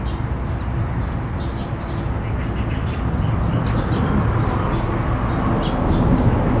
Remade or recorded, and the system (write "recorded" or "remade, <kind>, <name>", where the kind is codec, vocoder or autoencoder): recorded